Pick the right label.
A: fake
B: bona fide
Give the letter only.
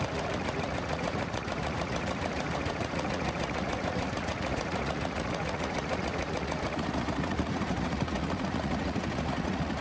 A